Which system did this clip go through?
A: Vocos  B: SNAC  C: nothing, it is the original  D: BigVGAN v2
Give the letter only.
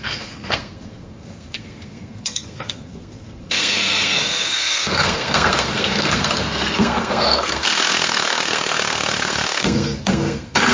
B